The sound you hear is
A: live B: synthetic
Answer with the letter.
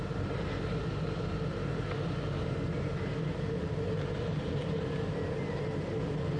B